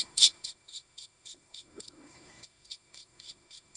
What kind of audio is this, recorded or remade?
remade